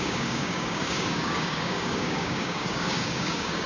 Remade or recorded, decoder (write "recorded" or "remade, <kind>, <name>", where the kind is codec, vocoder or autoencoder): remade, codec, DAC